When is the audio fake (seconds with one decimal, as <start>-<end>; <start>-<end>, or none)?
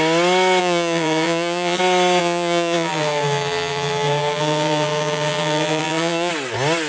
0.6-1.8; 2.2-6.3